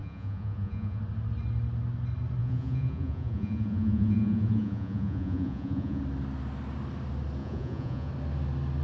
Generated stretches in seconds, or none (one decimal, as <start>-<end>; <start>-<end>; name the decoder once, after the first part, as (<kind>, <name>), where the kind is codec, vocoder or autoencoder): 0.0-1.0 (vocoder, Vocos); 2.4-6.0; 7.4-8.1